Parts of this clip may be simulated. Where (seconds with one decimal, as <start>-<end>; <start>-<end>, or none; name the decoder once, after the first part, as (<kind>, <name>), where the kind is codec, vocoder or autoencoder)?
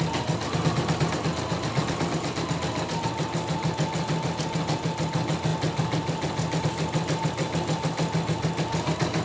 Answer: none